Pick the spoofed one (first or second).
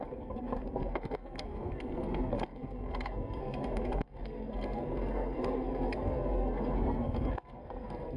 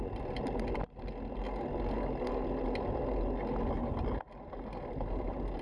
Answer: first